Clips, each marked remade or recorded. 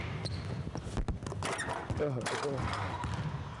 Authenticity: recorded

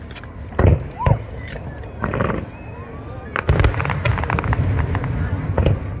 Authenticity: recorded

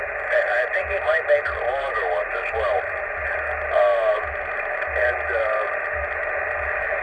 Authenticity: recorded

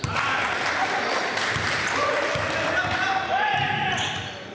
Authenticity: recorded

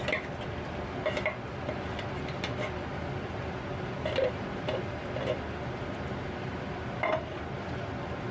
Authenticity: recorded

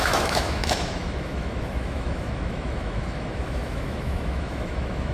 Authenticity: remade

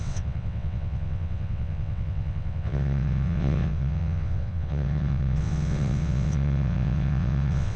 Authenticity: remade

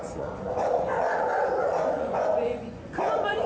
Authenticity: remade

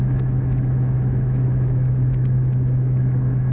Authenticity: remade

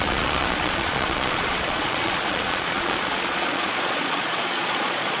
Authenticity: remade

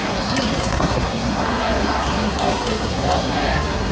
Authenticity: remade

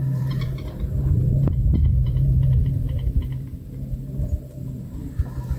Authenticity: remade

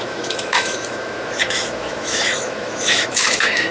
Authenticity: remade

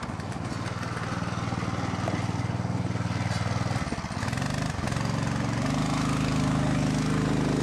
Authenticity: recorded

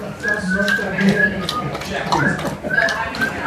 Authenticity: recorded